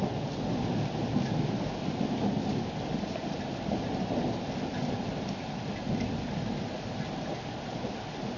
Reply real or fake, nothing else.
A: real